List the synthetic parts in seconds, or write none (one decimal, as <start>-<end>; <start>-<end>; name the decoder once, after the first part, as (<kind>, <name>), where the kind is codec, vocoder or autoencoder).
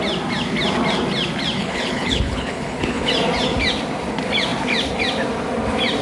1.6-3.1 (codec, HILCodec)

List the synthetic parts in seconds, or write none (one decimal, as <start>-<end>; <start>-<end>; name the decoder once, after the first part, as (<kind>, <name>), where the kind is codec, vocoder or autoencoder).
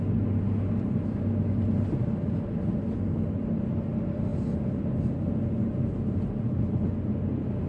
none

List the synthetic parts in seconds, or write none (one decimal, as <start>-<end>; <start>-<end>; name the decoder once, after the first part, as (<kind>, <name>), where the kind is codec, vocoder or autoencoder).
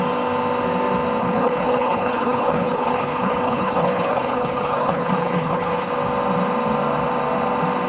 1.2-5.9 (codec, HILCodec)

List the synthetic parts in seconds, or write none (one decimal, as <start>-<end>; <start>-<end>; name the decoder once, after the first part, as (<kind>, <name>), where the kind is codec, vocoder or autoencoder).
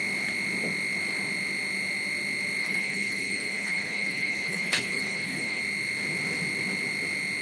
2.6-5.6 (codec, HILCodec)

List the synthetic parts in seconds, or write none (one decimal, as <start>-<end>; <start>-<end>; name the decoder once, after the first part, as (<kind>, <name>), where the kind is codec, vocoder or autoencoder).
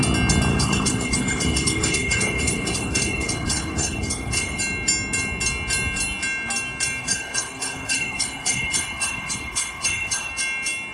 0.5-4.6 (codec, HILCodec); 7.0-10.3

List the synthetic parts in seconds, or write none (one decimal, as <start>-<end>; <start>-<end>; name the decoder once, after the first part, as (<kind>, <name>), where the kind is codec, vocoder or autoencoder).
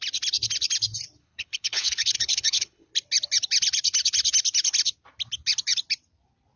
1.2-2.9 (codec, HILCodec)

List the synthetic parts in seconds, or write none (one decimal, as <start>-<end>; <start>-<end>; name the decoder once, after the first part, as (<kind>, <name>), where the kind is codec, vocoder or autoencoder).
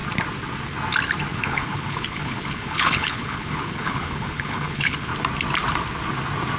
1.3-5.1 (codec, HILCodec)